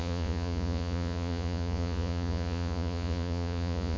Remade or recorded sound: remade